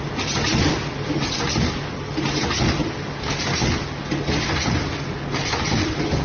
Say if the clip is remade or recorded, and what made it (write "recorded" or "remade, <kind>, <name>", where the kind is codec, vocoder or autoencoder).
recorded